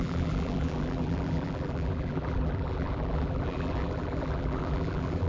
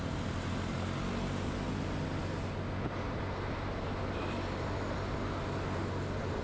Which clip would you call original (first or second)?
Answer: second